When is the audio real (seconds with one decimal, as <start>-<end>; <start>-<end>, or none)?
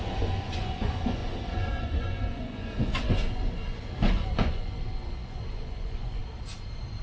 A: 6.2-7.0